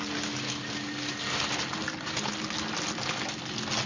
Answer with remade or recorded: recorded